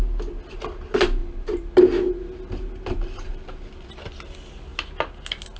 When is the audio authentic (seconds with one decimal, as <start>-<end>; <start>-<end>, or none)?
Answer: 0.0-5.6